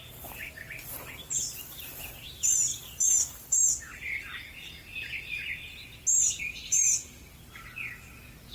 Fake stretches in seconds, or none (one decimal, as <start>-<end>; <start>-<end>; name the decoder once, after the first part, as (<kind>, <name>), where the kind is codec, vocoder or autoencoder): none